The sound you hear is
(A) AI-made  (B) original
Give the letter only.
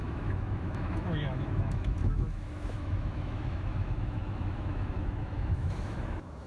A